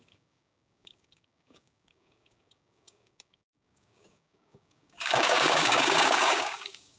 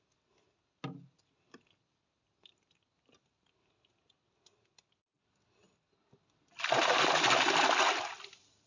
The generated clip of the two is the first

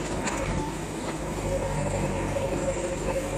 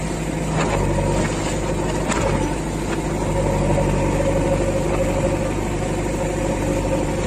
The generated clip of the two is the first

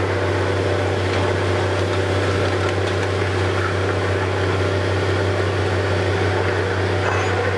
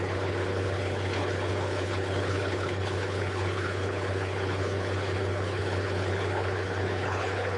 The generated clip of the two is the second